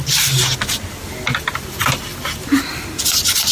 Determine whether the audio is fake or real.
real